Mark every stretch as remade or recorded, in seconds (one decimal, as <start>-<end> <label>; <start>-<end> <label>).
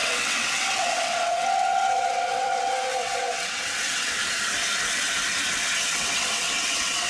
0.0-4.2 remade; 4.2-5.9 recorded; 5.9-7.1 remade